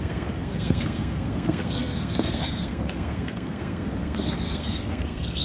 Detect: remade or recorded remade